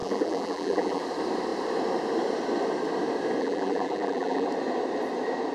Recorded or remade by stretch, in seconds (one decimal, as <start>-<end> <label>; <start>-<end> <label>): 0.0-1.0 remade; 1.0-3.4 recorded; 3.4-4.5 remade; 4.5-5.5 recorded